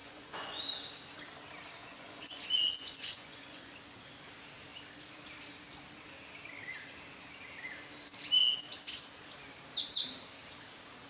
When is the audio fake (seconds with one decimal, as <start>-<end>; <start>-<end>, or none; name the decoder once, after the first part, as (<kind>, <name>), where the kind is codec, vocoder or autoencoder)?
0.0-0.6 (vocoder, Vocos); 1.8-3.8